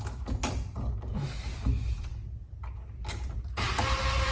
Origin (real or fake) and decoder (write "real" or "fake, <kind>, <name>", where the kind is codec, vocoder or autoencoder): real